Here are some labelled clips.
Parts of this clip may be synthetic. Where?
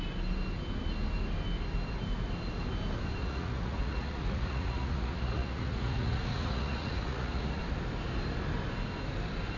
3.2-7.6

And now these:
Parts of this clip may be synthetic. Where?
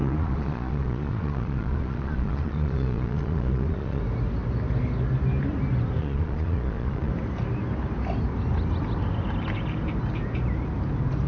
0.0-4.0; 6.0-7.1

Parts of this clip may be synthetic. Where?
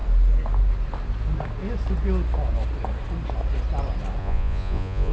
4.2-5.1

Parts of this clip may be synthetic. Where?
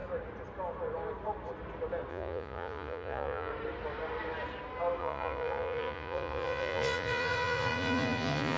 2.1-3.5; 5.0-8.6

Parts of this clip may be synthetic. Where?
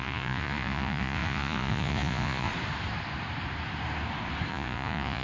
0.0-2.5; 4.5-5.2